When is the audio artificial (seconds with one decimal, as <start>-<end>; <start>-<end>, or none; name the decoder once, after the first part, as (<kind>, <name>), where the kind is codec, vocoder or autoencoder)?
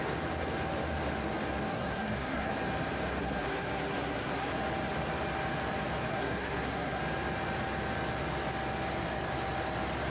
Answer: 1.7-2.5 (codec, SNAC); 3.2-4.5; 6.1-7.0